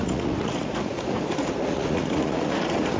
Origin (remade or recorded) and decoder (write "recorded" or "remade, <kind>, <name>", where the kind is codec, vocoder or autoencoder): remade, vocoder, Vocos